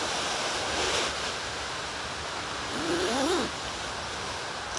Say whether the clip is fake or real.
real